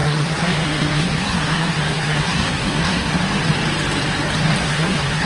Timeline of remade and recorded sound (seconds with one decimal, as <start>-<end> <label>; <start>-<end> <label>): 0.0-3.2 remade; 3.2-4.6 recorded; 4.6-5.3 remade